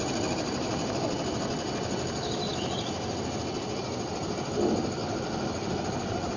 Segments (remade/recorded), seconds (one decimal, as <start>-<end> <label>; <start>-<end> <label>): 0.0-6.4 recorded